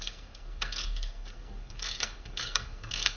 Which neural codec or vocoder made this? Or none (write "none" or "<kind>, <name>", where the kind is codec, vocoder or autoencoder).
codec, SNAC